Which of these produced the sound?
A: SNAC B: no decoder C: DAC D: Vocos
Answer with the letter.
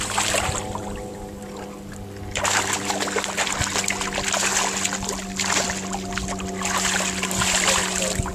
B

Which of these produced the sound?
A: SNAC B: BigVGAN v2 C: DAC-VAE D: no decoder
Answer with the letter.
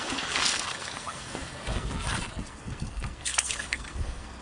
A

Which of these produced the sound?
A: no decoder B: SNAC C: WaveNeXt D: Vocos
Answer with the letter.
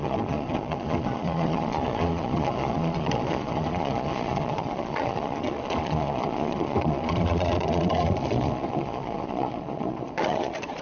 D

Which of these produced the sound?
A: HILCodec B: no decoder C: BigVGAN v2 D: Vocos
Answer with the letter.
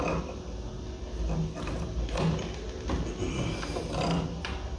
B